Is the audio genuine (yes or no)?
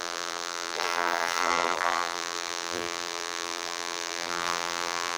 no